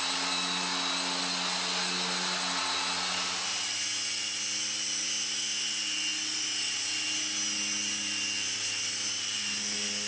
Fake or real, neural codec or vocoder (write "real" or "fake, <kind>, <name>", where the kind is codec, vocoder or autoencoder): real